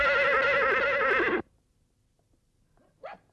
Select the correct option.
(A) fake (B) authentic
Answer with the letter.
B